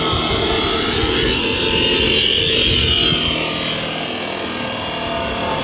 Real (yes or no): yes